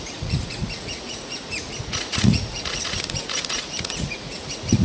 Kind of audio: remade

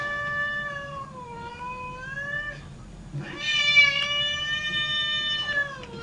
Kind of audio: recorded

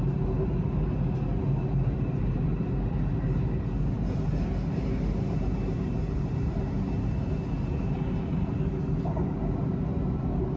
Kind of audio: recorded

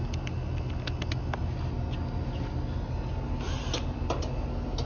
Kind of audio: recorded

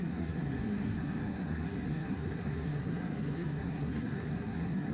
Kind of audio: remade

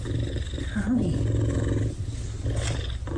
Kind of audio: recorded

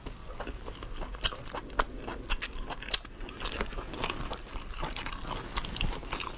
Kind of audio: recorded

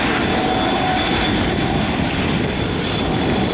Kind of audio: recorded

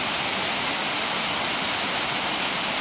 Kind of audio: recorded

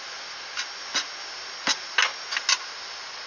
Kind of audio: recorded